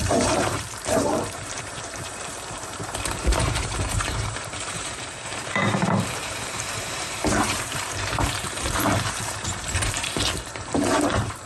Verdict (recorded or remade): remade